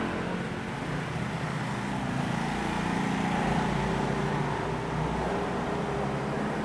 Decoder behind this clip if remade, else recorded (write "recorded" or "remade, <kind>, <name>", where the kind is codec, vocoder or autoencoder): recorded